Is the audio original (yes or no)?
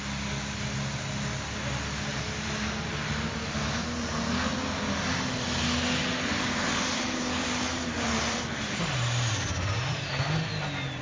yes